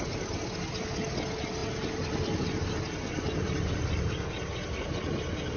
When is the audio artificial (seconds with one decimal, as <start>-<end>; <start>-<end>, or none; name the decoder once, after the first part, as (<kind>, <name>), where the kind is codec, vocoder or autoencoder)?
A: none